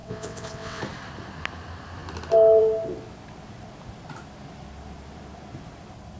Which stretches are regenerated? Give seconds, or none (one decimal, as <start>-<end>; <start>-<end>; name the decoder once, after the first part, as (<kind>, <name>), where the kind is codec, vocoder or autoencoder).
0.0-0.8 (vocoder, WaveNeXt)